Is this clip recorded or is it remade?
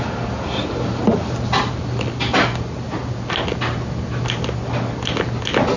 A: recorded